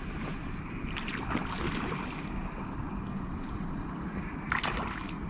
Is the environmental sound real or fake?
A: real